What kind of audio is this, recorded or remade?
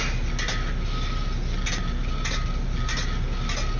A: recorded